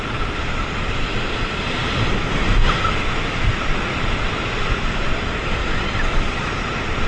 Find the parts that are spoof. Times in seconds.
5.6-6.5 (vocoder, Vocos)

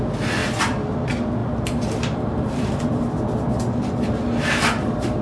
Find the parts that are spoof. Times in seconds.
0.4-0.9 (vocoder, BigVGAN v2); 1.4-3.1

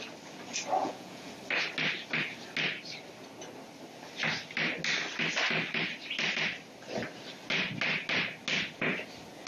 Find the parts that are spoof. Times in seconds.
0.8-1.3 (vocoder, Vocos)

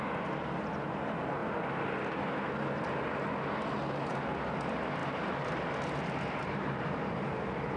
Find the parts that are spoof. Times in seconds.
5.0-5.5 (vocoder, BigVGAN v2); 6.4-7.8

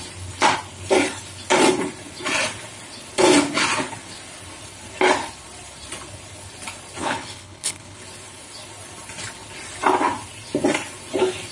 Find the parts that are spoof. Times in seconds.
7.0-8.0 (codec, HILCodec)

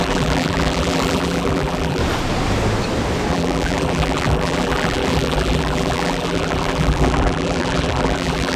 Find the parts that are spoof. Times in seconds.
0.0-2.0 (vocoder, BigVGAN v2); 3.3-8.6

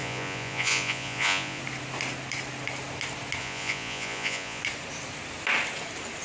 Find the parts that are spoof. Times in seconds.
0.0-1.6 (vocoder, Vocos); 3.4-4.6

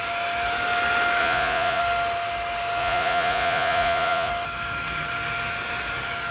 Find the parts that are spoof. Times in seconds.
1.2-1.8 (vocoder, Vocos); 2.8-4.3